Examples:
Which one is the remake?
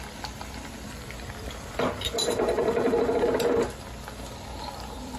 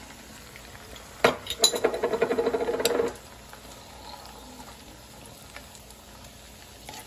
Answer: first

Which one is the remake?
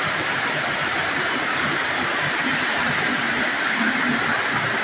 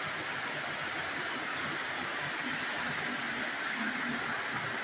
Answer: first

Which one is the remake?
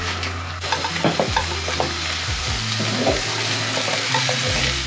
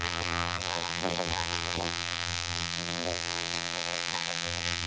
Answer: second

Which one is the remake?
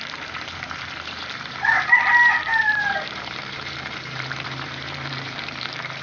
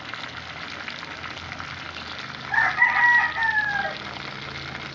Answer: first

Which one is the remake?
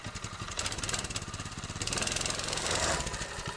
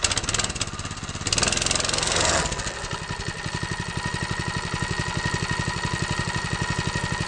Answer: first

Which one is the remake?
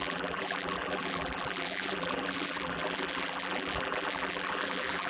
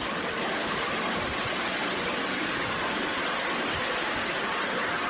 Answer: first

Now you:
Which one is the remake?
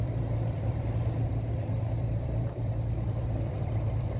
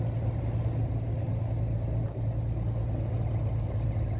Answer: first